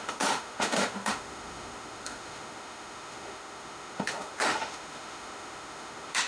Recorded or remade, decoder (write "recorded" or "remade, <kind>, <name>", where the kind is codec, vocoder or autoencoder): remade, autoencoder, DAC-VAE